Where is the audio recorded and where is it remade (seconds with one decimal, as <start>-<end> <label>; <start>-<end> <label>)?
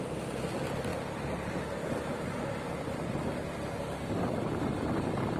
0.0-5.4 recorded